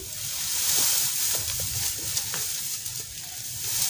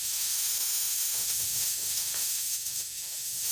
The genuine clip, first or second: first